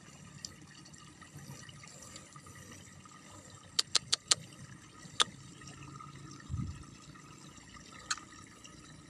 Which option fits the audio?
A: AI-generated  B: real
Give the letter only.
B